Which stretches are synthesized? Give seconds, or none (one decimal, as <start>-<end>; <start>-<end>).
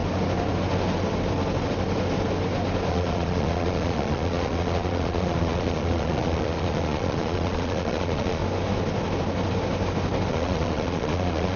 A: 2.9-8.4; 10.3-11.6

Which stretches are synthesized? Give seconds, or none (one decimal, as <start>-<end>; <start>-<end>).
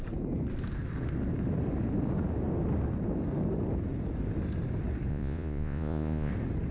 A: 5.1-6.3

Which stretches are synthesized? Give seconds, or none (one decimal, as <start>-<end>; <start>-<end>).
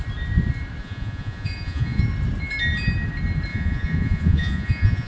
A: 0.8-2.0; 3.5-5.1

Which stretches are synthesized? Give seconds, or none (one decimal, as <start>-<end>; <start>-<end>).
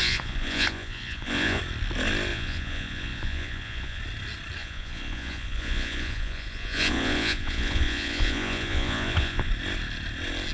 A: 0.0-1.6; 2.3-4.0; 4.6-9.5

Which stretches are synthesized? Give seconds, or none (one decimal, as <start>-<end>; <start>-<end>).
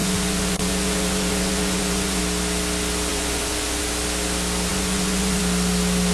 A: 0.0-2.2; 3.1-3.8; 4.7-5.4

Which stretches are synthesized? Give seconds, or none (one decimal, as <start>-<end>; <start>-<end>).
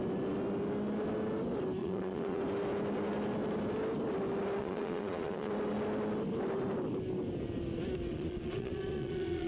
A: 1.8-2.4; 4.6-5.5; 8.1-9.5